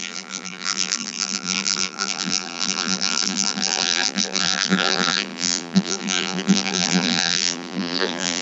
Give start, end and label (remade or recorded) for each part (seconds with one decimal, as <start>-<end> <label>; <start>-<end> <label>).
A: 0.0-8.4 remade